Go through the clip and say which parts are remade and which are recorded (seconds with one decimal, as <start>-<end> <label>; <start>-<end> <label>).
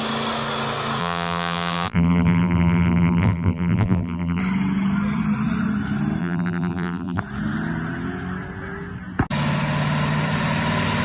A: 0.0-1.0 recorded; 1.0-4.4 remade; 4.4-6.2 recorded; 6.2-7.2 remade; 7.2-11.0 recorded